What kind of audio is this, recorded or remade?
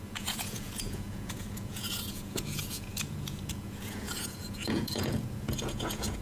remade